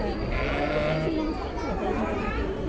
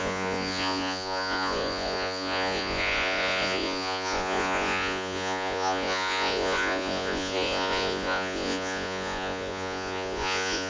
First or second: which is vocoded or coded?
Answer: second